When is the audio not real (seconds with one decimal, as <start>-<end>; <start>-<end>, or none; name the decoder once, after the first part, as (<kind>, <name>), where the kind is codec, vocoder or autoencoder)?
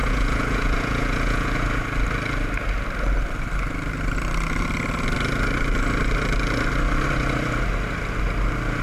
0.0-1.7 (vocoder, Vocos)